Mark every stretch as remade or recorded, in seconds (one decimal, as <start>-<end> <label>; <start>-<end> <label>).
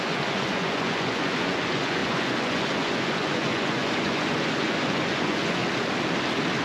0.0-5.6 remade; 5.6-6.6 recorded